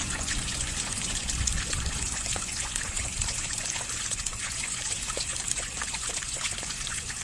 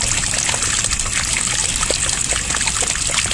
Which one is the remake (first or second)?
first